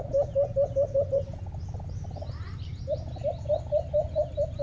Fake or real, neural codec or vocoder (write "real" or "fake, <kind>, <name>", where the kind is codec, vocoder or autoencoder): real